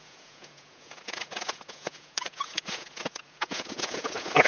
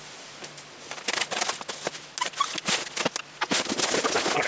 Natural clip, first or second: second